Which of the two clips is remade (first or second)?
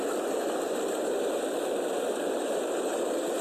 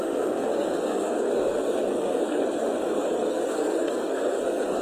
second